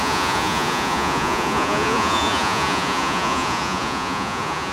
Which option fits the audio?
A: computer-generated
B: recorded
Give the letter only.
A